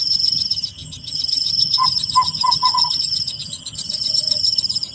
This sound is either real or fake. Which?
fake